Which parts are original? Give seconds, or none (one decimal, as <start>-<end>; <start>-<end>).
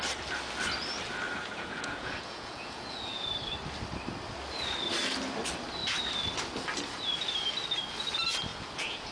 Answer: 0.0-1.4; 3.3-8.5